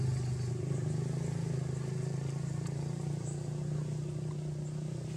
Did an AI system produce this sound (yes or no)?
no